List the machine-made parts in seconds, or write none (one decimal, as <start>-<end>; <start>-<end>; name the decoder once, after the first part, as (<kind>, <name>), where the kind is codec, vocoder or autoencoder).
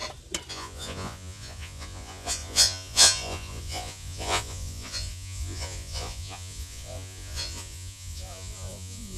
0.5-9.2 (vocoder, Vocos)